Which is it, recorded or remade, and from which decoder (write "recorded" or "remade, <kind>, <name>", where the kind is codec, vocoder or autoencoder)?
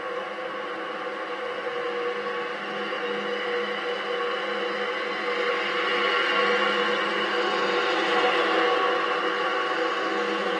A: recorded